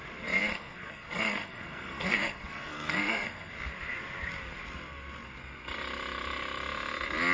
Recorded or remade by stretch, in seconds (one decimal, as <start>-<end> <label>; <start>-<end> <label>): 0.0-0.5 recorded; 0.5-3.5 remade; 3.5-7.3 recorded